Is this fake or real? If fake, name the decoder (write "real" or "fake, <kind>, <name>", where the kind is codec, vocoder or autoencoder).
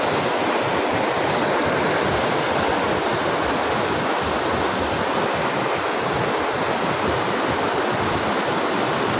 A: real